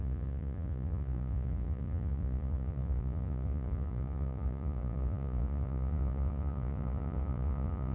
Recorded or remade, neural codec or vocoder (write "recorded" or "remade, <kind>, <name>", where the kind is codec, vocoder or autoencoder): remade, vocoder, Vocos